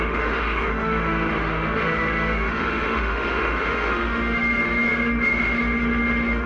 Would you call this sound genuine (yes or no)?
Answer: no